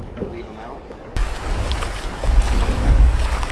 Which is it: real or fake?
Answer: fake